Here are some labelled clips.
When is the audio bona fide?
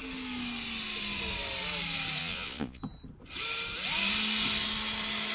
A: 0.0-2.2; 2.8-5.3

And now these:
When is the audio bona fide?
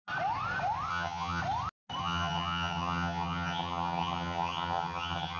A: 0.0-0.9; 1.4-2.0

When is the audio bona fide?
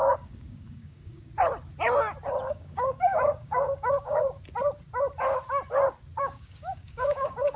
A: 1.3-2.4; 4.2-6.2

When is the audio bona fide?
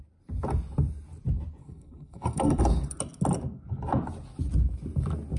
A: 0.0-1.6; 2.6-5.4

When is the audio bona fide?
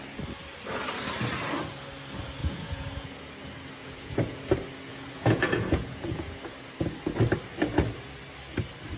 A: 0.0-2.4; 3.3-3.8; 4.4-4.9; 6.4-9.0